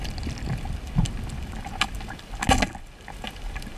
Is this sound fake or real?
real